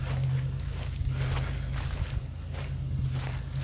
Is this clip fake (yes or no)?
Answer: no